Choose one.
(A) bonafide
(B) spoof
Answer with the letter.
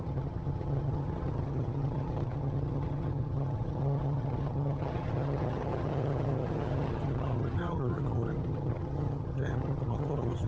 B